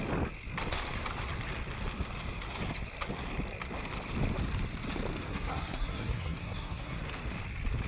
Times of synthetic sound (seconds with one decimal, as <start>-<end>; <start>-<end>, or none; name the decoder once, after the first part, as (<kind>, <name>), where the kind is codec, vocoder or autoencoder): 5.3-7.0 (codec, SNAC)